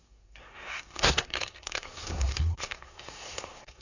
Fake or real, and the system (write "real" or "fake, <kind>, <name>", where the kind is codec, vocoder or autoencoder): fake, codec, SNAC